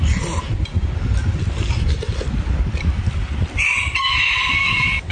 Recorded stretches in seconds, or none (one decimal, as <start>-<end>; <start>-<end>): 0.0-4.6